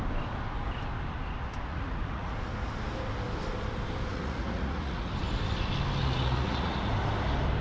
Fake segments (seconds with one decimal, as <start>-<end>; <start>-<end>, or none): 1.7-2.3; 4.1-5.1; 6.0-6.9